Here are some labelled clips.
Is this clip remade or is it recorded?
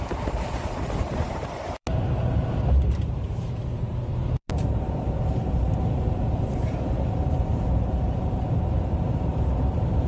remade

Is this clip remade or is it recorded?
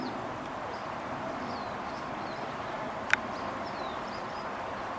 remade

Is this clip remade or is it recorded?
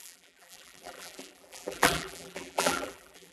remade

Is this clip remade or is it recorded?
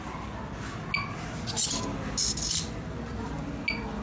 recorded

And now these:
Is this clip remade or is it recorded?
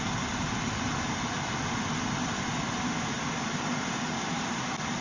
remade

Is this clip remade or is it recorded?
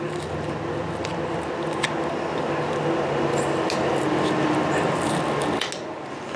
recorded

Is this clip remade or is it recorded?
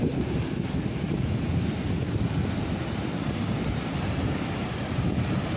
recorded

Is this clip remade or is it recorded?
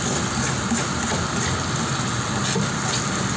recorded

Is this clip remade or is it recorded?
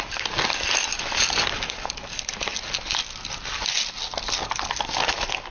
recorded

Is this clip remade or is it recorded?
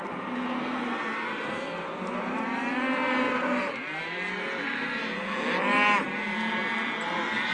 remade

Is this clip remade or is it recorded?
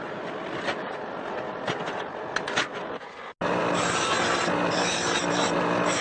recorded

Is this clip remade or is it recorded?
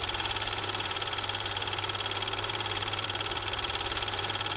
remade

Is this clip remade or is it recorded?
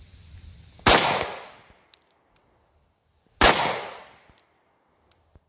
recorded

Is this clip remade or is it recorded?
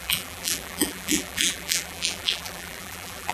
remade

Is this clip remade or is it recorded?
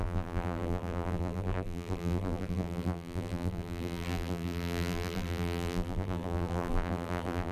remade